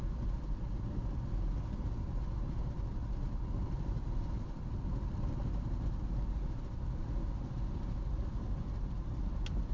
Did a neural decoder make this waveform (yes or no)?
no